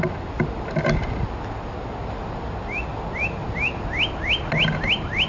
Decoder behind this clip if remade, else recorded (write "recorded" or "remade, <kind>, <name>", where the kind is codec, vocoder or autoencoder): recorded